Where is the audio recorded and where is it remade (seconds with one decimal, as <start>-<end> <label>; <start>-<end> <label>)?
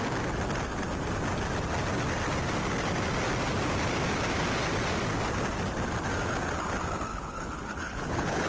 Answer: 0.0-7.1 recorded; 7.1-8.5 remade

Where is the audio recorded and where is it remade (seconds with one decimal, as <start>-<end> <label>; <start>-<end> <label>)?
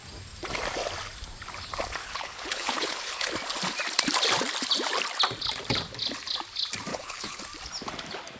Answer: 0.0-2.0 recorded; 2.0-3.3 remade; 3.3-6.9 recorded; 6.9-7.4 remade; 7.4-8.4 recorded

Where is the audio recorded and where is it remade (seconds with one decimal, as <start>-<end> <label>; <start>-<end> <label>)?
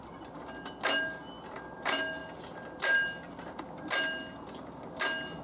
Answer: 0.0-5.4 recorded